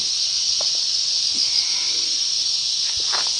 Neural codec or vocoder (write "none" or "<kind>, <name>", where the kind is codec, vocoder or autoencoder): none